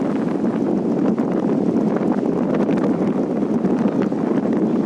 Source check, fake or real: real